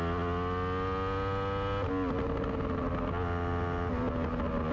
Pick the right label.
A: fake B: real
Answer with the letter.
B